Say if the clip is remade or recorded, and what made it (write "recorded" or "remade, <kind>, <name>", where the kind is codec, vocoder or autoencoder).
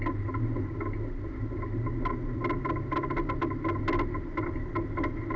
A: recorded